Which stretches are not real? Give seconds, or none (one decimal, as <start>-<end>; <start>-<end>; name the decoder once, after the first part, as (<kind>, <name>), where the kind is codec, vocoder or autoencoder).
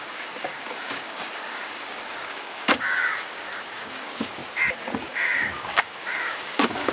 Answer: 0.0-4.4 (codec, DAC); 5.0-6.9